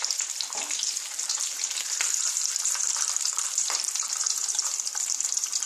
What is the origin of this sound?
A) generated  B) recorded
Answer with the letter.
A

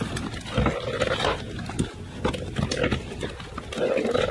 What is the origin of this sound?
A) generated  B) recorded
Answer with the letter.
B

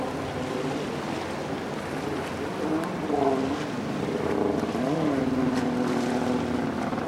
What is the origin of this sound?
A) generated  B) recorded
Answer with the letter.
B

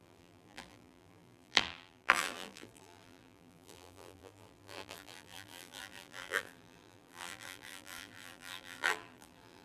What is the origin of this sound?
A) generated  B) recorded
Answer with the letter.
A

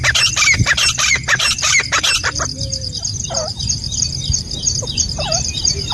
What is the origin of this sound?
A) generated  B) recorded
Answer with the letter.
A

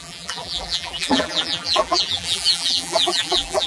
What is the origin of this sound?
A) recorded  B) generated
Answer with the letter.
B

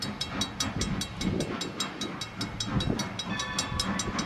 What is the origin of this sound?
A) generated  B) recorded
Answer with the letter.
B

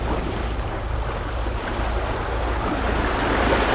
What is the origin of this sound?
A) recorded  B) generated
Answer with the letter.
A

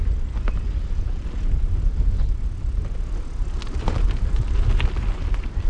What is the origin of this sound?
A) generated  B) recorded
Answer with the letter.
B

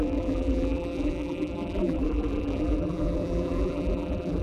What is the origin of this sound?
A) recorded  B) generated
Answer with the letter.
B